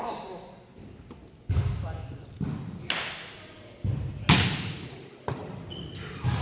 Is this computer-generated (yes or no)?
no